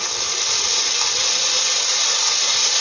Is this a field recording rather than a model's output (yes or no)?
yes